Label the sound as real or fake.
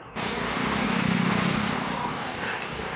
fake